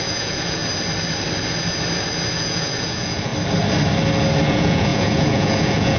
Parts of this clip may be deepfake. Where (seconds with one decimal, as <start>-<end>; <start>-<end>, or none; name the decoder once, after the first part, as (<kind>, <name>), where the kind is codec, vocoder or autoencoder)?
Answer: 0.0-0.6 (vocoder, Vocos); 2.3-3.3; 4.5-6.0